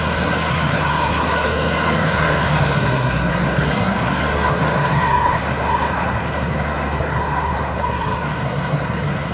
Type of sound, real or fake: fake